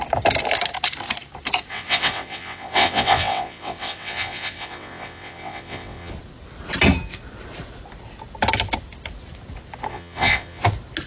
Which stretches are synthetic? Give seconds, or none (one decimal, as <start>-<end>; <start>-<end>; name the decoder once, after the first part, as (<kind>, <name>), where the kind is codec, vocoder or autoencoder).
1.7-6.1 (vocoder, WaveNeXt); 9.9-10.6